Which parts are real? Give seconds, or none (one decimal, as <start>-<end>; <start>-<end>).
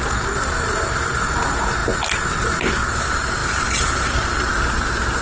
0.0-5.2